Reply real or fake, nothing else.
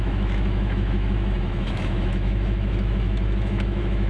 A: fake